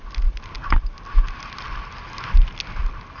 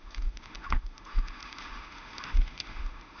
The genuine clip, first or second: first